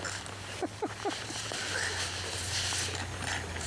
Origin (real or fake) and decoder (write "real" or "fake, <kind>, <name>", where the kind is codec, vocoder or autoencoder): real